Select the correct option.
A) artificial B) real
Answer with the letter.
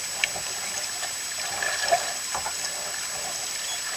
B